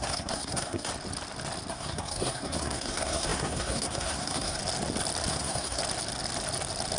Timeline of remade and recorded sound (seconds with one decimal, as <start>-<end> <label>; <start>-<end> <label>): 0.0-0.9 remade; 0.9-1.7 recorded; 1.7-4.6 remade; 4.6-5.3 recorded; 5.3-5.8 remade; 5.8-7.0 recorded